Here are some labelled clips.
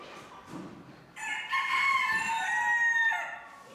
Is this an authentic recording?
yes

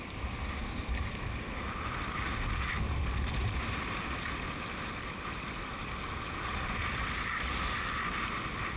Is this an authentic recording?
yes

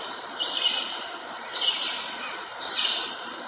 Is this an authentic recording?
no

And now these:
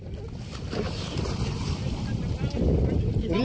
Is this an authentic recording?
yes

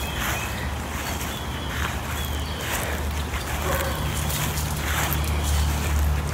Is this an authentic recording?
yes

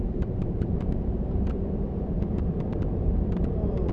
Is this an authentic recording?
no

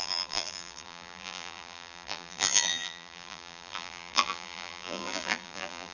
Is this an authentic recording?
no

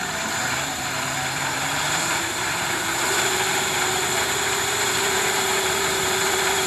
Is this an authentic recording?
no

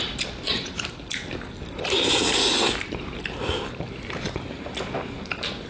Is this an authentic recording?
no